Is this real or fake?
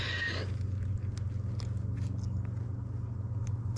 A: real